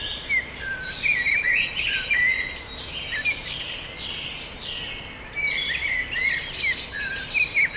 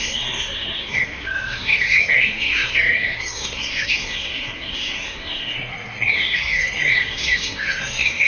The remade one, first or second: second